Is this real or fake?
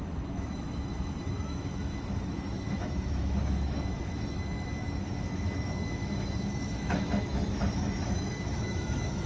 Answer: fake